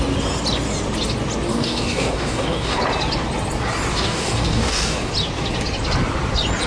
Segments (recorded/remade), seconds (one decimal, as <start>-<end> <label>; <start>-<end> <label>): 0.0-1.5 recorded; 1.5-2.8 remade; 2.8-3.9 recorded; 3.9-5.1 remade; 5.1-6.7 recorded